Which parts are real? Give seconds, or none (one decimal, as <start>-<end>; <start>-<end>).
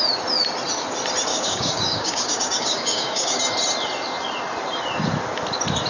0.0-1.3; 3.4-5.9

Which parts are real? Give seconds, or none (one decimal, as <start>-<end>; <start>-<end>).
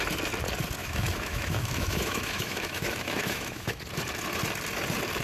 0.0-0.8; 3.8-5.2